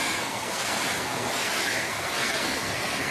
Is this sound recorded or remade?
remade